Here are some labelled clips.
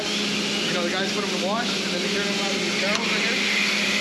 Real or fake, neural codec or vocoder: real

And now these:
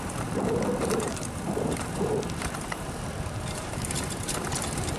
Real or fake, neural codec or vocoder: fake, vocoder, BigVGAN v2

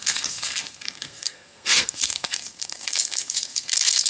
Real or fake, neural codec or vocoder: fake, codec, SNAC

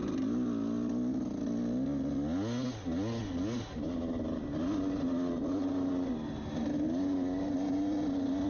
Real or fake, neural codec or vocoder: real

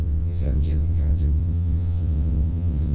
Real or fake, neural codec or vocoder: fake, vocoder, WaveNeXt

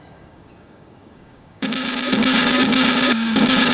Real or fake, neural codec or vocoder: fake, codec, DAC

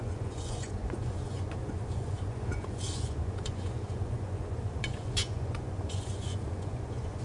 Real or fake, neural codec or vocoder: fake, vocoder, Vocos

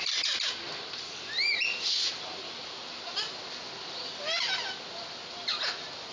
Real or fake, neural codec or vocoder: real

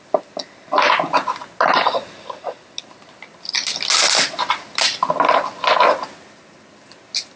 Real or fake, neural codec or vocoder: real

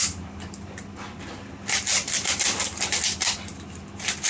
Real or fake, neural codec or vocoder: real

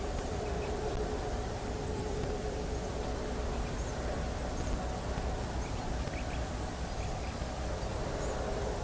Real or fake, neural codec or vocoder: real